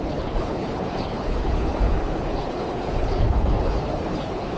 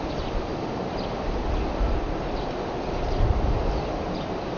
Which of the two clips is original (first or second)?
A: second